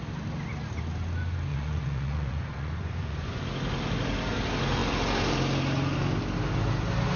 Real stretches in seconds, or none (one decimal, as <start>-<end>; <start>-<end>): 0.0-1.5; 3.4-7.2

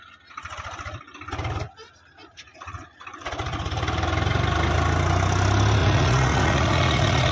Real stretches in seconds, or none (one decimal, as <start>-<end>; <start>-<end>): 0.0-2.2; 3.3-5.8

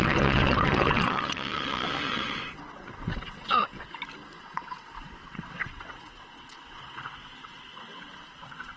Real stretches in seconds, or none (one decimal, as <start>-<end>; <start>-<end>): 3.7-4.4

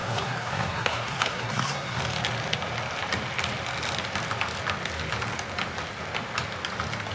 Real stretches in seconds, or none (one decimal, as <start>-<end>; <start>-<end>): 2.0-7.1